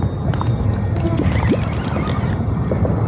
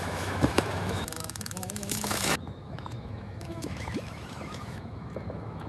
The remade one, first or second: second